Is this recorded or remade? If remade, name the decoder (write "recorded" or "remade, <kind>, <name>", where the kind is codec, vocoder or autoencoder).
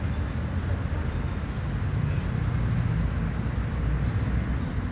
recorded